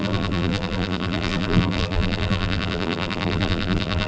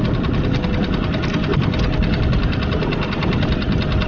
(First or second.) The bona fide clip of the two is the second